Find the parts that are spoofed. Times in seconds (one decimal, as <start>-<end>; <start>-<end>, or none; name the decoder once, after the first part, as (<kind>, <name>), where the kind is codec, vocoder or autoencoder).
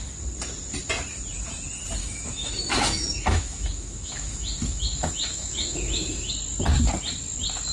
2.0-6.3 (autoencoder, DAC-VAE)